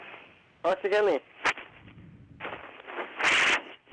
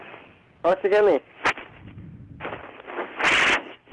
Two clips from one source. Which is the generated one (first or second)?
first